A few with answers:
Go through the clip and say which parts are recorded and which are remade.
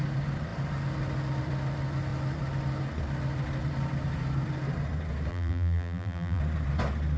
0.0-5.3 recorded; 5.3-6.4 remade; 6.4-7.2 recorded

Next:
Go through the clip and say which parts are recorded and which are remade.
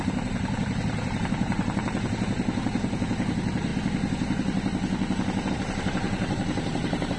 0.0-3.7 remade; 3.7-5.5 recorded; 5.5-7.2 remade